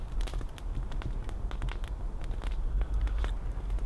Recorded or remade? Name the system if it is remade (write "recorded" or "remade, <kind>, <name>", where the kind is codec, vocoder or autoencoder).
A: recorded